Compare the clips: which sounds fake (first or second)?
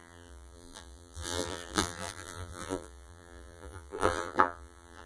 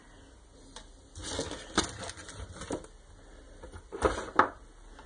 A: first